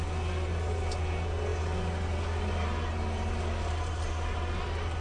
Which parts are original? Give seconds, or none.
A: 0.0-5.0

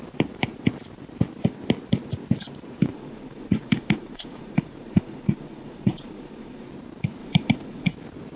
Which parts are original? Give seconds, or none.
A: 0.0-2.9; 6.7-7.2; 7.9-8.4

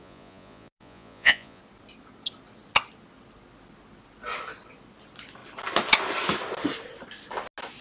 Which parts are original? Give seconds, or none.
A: 1.6-7.8

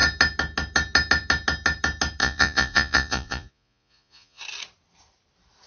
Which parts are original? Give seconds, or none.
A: 0.0-2.2; 4.4-5.7

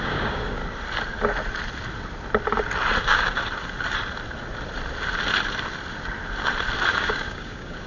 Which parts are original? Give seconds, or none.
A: 0.6-3.0; 3.4-6.9

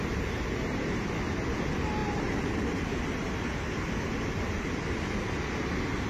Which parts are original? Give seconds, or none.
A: 0.0-6.1

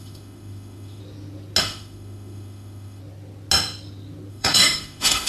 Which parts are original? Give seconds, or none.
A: 1.0-1.6; 3.0-4.3